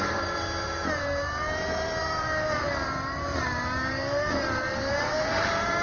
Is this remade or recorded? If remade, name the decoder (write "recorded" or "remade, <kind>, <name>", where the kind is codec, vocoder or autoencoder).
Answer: remade, vocoder, BigVGAN v2